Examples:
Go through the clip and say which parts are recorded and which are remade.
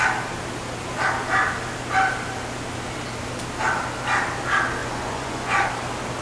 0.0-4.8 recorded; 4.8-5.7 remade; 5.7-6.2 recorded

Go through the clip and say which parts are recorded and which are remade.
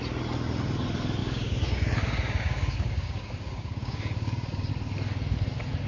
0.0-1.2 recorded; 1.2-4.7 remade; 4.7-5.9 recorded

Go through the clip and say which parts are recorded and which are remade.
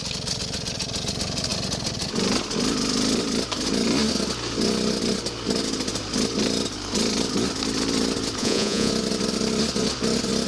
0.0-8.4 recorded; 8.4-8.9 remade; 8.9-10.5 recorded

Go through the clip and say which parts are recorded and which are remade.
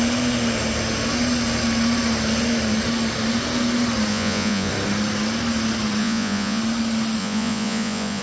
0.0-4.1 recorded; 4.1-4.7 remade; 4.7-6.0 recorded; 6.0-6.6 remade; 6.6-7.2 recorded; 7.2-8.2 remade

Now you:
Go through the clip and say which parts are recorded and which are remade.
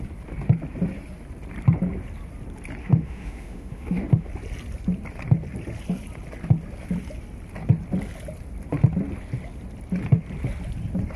0.0-2.8 recorded; 2.8-4.3 remade; 4.3-11.2 recorded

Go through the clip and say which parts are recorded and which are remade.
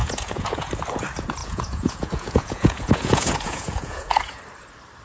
0.0-0.7 remade; 0.7-1.4 recorded; 1.4-4.4 remade; 4.4-5.0 recorded